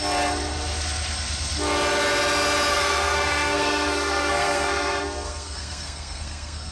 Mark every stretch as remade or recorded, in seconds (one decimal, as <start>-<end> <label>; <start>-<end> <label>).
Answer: 0.0-2.7 recorded; 2.7-6.7 remade